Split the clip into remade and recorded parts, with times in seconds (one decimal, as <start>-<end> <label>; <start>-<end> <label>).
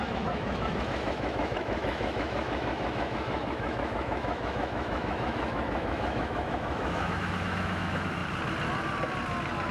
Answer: 0.0-8.2 remade; 8.2-9.7 recorded